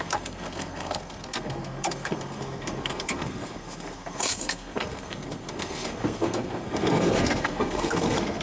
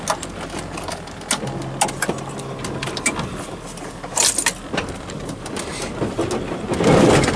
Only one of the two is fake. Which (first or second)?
first